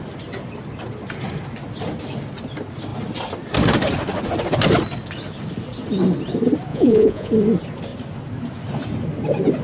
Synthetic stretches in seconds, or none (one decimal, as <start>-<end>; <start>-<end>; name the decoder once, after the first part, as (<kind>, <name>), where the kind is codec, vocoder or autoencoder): 6.7-7.3 (vocoder, Vocos)